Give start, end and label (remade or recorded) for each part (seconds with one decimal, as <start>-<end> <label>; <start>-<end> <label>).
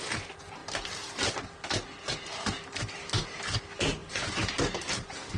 0.0-5.4 recorded